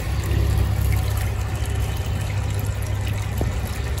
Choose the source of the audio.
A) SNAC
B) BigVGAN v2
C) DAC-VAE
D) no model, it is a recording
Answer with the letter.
D